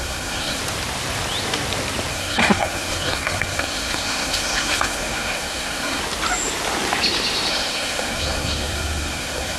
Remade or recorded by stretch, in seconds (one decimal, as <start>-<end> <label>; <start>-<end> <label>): 0.0-0.6 remade; 0.6-2.1 recorded; 2.1-6.0 remade; 6.0-7.5 recorded; 7.5-9.6 remade